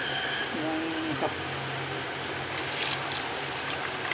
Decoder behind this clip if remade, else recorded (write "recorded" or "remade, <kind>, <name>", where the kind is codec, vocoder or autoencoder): recorded